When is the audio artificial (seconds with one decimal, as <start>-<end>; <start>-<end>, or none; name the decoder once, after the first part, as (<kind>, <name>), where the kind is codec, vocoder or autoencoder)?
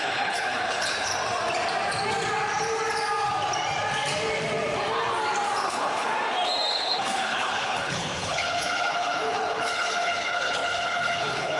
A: 0.0-1.1 (codec, HILCodec); 5.6-6.1; 6.7-11.6